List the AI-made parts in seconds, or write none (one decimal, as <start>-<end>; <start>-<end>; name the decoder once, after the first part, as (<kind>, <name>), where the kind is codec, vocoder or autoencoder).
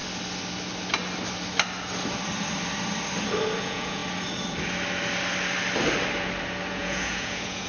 3.6-4.0 (vocoder, Vocos); 6.7-7.7